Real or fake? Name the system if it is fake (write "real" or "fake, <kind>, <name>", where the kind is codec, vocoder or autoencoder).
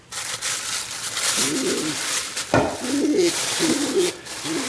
real